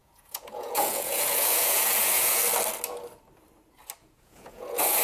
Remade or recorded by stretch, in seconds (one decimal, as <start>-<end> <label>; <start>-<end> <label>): 0.0-2.4 remade; 2.4-4.0 recorded; 4.0-5.0 remade